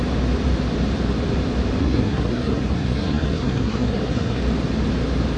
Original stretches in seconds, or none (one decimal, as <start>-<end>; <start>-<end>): 0.0-1.8; 4.4-5.4